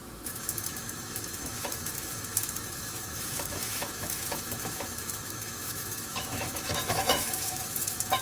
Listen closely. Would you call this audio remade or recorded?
remade